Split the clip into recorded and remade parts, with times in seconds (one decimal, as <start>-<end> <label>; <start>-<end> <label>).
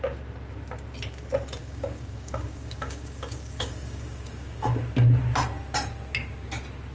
0.0-1.6 recorded; 1.6-4.8 remade; 4.8-6.9 recorded